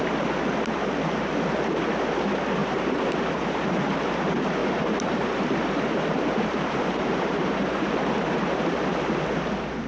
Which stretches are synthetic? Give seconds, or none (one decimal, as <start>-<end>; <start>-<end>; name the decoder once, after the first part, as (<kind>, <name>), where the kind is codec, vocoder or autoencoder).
2.6-4.0 (vocoder, BigVGAN v2); 4.6-8.7